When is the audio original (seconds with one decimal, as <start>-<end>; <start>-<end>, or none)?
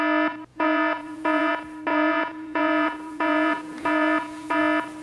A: 0.0-0.5; 1.5-1.9; 4.6-5.0